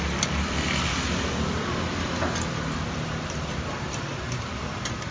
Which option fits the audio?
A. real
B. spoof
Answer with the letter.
B